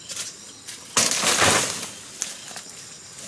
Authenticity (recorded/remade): recorded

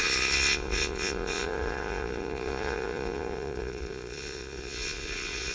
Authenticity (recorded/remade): remade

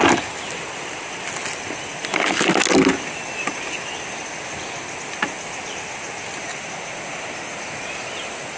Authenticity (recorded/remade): recorded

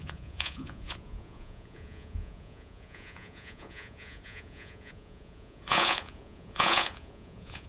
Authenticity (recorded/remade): remade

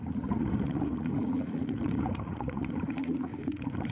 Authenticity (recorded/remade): remade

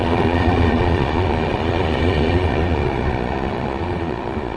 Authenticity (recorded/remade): remade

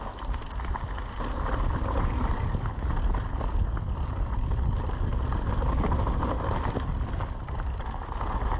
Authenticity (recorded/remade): recorded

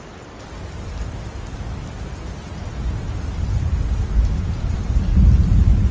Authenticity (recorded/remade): recorded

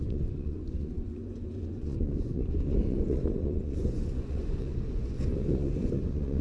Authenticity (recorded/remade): remade